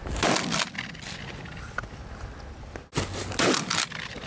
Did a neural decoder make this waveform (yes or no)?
no